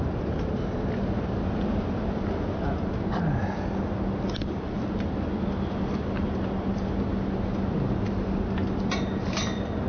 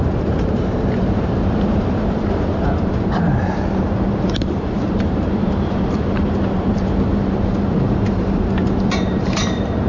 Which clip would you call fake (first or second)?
second